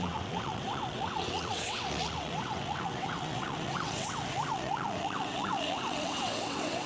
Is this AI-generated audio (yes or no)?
yes